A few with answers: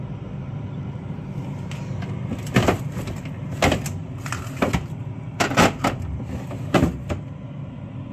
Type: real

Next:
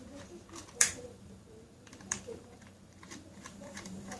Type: fake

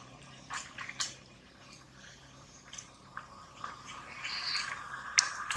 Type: fake